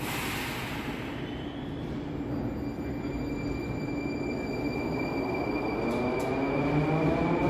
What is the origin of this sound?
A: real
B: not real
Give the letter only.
A